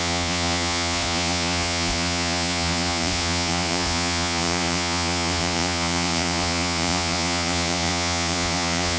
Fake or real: fake